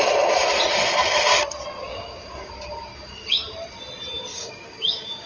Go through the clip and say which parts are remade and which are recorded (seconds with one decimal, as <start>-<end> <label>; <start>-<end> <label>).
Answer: 0.0-1.9 recorded; 1.9-2.5 remade; 2.5-2.9 recorded; 2.9-3.4 remade; 3.4-4.3 recorded; 4.3-5.3 remade